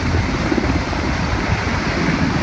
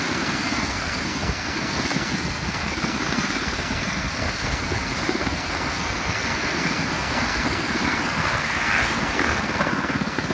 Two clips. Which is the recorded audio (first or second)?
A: first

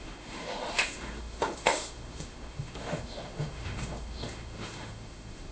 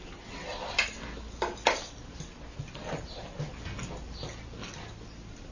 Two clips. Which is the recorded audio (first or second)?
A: second